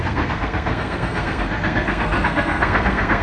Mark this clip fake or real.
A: fake